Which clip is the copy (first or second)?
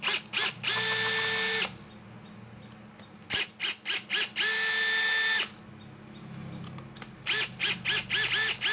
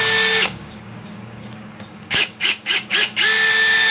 second